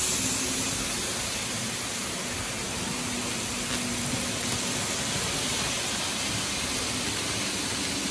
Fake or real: real